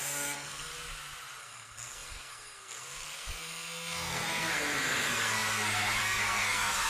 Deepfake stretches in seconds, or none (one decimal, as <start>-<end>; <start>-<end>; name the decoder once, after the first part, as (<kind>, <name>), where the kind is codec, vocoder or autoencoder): 0.0-0.7 (codec, SNAC); 1.4-6.9